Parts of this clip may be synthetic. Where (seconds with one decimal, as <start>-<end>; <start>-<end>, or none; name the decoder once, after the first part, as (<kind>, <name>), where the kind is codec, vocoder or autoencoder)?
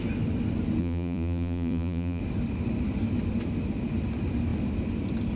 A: 0.8-2.2 (vocoder, Vocos)